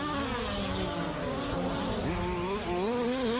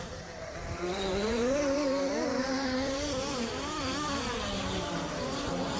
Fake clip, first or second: second